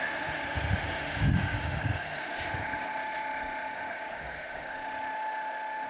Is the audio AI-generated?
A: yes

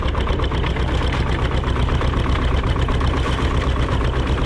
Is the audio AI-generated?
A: no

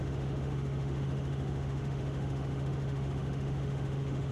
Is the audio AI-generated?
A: yes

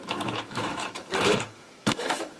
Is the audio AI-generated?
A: yes